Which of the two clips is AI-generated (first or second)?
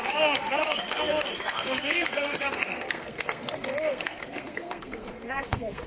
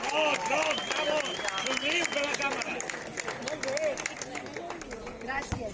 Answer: first